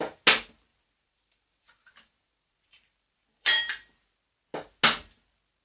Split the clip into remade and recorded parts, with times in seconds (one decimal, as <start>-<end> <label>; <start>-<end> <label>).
0.0-0.7 recorded; 0.7-4.1 remade; 4.1-5.6 recorded